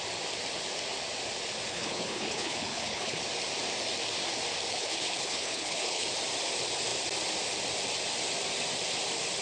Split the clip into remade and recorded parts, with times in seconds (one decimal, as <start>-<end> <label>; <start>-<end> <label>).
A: 0.0-1.7 recorded; 1.7-3.2 remade; 3.2-4.8 recorded; 4.8-6.1 remade; 6.1-9.4 recorded